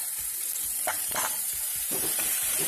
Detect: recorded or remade remade